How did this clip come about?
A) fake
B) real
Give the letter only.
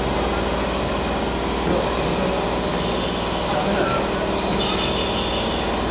B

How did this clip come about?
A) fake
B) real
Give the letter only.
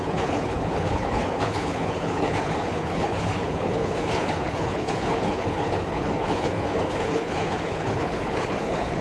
A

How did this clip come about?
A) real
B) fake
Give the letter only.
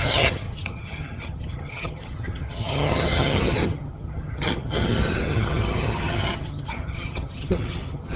B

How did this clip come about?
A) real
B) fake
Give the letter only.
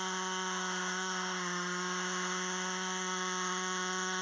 B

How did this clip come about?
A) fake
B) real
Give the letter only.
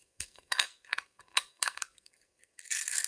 A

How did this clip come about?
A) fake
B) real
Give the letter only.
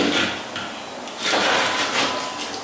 B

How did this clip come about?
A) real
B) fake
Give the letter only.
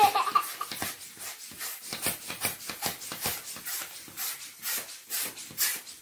A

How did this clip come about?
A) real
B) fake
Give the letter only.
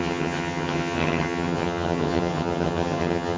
B